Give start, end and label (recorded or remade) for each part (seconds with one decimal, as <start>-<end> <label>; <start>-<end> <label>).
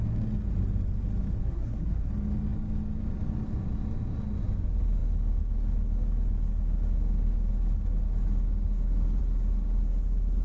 0.0-1.4 recorded; 1.4-2.1 remade; 2.1-10.4 recorded